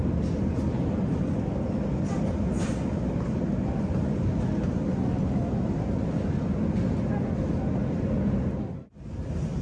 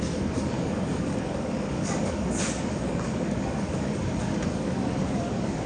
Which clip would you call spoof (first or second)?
second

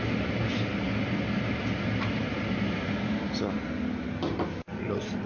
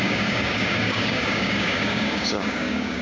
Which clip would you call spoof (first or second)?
second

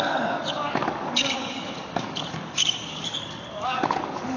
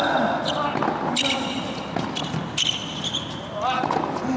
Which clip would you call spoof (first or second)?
first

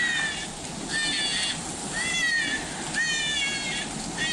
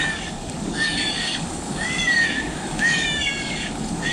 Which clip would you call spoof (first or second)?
second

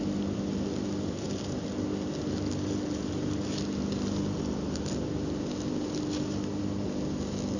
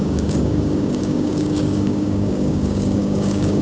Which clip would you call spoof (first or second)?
second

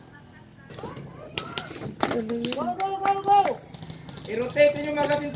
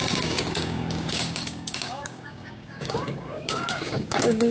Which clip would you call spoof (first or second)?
second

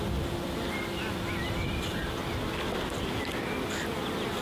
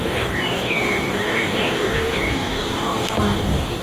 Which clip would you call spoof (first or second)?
second